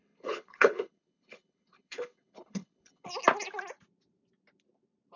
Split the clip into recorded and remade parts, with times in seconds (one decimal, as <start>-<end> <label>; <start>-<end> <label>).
0.0-3.1 remade; 3.1-5.2 recorded

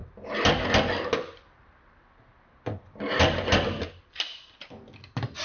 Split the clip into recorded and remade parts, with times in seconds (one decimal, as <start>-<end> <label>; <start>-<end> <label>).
0.0-5.4 recorded

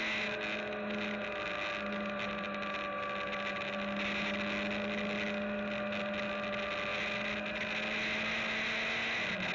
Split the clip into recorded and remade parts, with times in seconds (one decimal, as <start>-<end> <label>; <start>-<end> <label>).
0.0-9.5 recorded

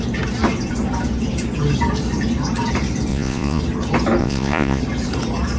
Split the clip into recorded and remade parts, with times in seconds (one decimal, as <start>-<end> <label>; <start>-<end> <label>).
0.0-3.1 recorded; 3.1-3.6 remade; 3.6-4.2 recorded; 4.2-4.8 remade; 4.8-5.6 recorded

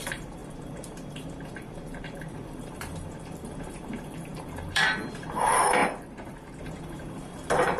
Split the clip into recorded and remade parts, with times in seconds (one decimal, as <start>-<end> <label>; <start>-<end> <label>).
0.0-5.8 remade; 5.8-6.6 recorded; 6.6-7.8 remade

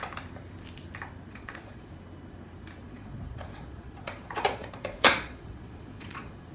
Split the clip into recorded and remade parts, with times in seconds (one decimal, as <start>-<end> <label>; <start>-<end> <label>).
0.0-1.3 recorded; 1.3-1.9 remade; 1.9-2.8 recorded; 2.8-6.5 remade

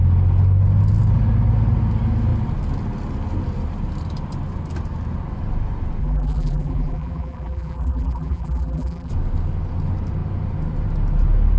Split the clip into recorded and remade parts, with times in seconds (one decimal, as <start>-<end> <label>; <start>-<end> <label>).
0.0-6.0 recorded; 6.0-9.1 remade; 9.1-11.6 recorded